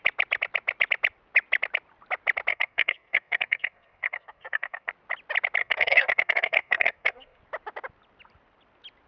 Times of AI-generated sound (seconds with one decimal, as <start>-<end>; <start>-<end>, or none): 2.5-4.9; 5.6-7.4